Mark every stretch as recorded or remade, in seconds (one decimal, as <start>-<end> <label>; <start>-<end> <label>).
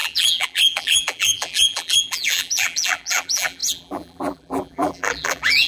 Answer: 0.0-5.7 remade